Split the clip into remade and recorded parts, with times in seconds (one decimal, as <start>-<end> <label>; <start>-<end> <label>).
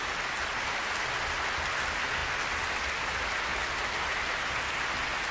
0.0-5.3 recorded